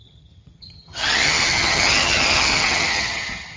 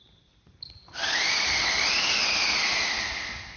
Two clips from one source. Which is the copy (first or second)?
first